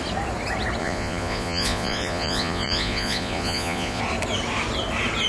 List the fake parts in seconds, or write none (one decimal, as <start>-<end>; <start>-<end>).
0.8-4.0